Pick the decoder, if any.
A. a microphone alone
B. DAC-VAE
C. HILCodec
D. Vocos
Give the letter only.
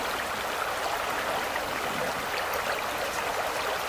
A